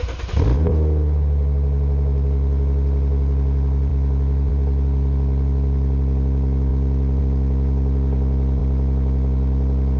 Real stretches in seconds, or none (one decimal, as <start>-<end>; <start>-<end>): 0.0-10.0